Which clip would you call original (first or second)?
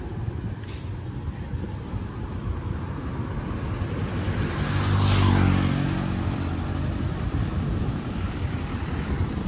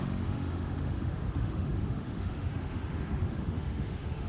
first